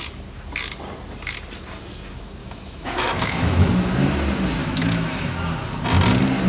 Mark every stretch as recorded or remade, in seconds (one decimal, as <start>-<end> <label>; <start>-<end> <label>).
0.0-2.4 recorded; 2.4-3.7 remade; 3.7-4.6 recorded; 4.6-5.3 remade; 5.3-6.5 recorded